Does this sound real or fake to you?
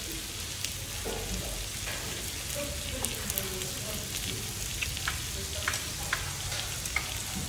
real